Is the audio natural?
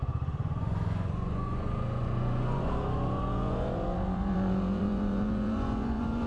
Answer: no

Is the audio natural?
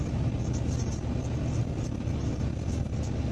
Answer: yes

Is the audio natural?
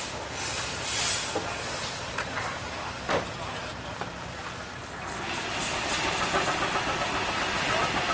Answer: yes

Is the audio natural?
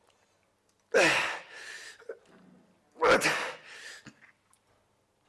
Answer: yes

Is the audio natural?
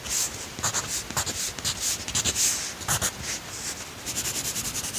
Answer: yes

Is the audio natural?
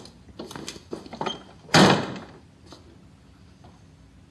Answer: yes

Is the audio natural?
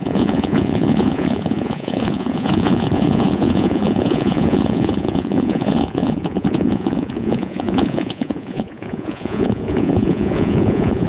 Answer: no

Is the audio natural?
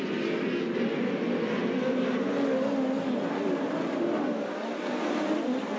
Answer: yes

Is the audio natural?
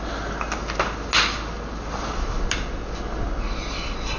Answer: yes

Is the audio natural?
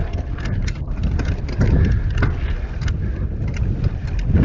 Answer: yes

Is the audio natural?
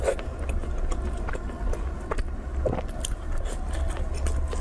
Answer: yes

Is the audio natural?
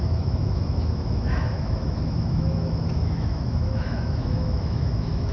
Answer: no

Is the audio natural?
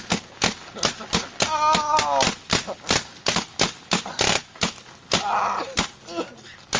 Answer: yes